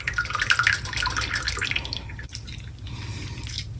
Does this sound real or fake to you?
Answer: real